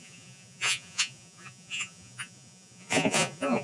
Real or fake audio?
fake